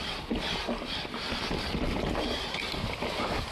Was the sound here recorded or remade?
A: recorded